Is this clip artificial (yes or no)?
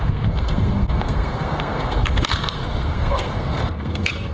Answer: yes